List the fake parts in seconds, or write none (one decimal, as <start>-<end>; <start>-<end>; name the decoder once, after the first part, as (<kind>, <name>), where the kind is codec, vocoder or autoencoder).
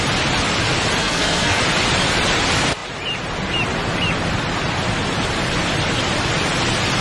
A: 1.0-1.6 (codec, SNAC)